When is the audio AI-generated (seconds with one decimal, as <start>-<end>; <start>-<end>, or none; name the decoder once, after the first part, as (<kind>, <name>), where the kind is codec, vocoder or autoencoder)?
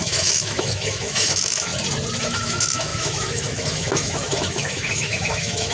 0.0-1.7 (autoencoder, DAC-VAE); 2.2-5.7